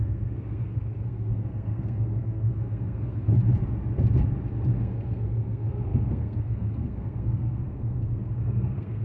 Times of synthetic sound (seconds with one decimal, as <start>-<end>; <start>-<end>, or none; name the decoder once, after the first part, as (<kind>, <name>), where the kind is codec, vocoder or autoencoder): 0.0-3.3 (codec, SNAC); 4.8-9.0